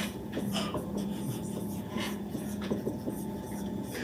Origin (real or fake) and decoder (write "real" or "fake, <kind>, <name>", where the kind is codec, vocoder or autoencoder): fake, vocoder, Vocos